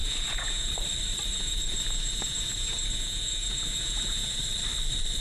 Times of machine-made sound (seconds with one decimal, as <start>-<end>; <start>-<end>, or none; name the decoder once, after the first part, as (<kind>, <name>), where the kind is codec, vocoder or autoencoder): 0.0-0.7 (vocoder, Vocos); 1.3-4.4